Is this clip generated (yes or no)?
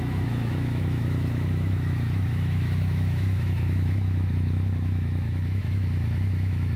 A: yes